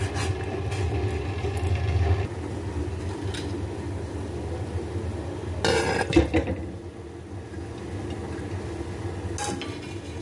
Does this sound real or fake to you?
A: real